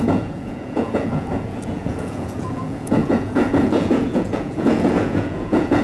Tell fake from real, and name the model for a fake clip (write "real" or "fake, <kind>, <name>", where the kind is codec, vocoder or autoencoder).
fake, vocoder, Vocos